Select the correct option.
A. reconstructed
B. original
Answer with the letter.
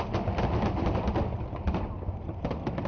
B